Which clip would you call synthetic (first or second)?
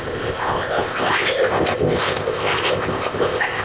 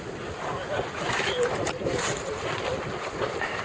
first